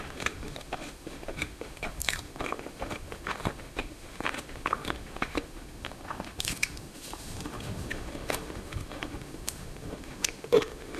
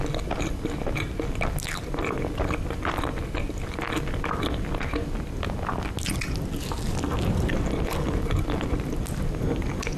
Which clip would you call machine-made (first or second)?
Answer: first